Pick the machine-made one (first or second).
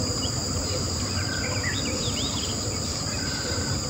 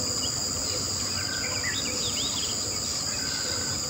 first